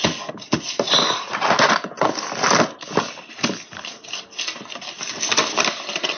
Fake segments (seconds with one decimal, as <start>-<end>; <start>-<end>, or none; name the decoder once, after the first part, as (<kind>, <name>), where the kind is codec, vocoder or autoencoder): none